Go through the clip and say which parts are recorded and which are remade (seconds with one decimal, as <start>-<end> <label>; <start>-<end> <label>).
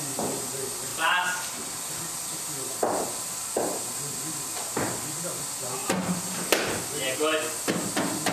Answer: 0.0-0.9 recorded; 0.9-1.8 remade; 1.8-8.3 recorded